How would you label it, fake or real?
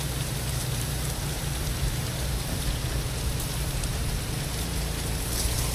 fake